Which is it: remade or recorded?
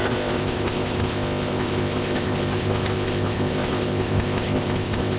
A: remade